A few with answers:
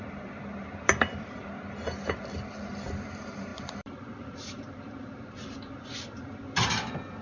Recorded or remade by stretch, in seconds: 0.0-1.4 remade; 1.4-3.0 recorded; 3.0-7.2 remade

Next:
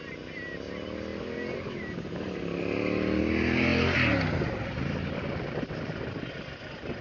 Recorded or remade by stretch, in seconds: 0.0-7.0 recorded

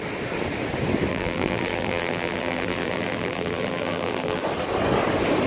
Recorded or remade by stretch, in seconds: 0.0-1.1 recorded; 1.1-4.4 remade; 4.4-5.5 recorded